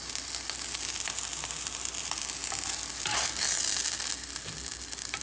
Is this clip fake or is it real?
real